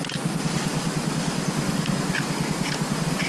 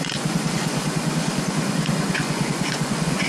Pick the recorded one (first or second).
first